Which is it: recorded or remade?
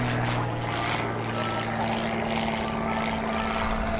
recorded